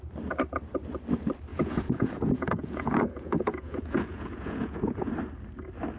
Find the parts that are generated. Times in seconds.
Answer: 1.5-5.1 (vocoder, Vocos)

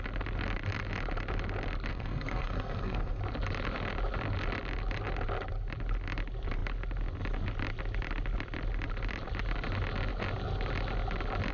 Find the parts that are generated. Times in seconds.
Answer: 1.9-3.2 (codec, SNAC)

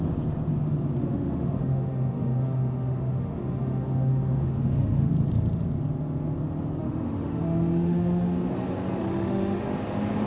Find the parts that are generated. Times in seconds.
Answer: 1.0-5.1 (autoencoder, DAC-VAE); 6.8-8.5; 9.0-9.6